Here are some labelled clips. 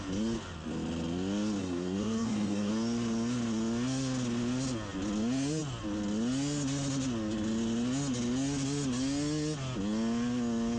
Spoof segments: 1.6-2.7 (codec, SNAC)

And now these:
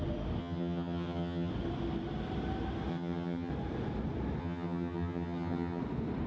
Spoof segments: 0.4-1.5 (vocoder, HiFi-GAN); 2.9-3.5; 4.4-5.8

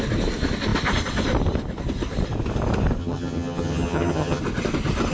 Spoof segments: 3.0-4.4 (vocoder, HiFi-GAN)

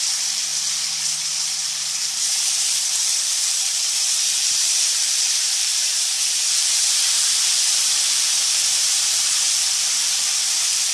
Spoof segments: 0.0-0.5 (vocoder, BigVGAN v2); 2.0-10.9

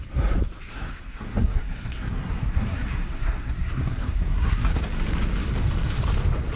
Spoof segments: 0.7-4.7 (codec, SNAC)

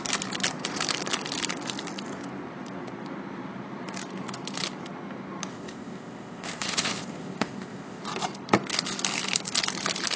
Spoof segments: 5.5-8.0 (codec, ZipCodec)

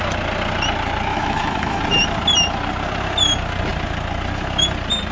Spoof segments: 1.1-1.8 (autoencoder, DAC-VAE)

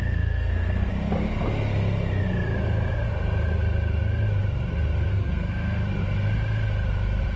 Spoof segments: 0.0-0.9 (codec, SNAC); 5.1-5.8